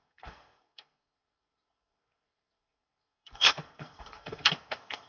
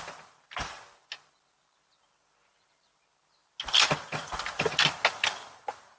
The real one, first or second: second